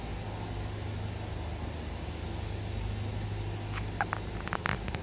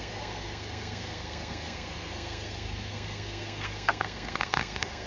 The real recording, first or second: first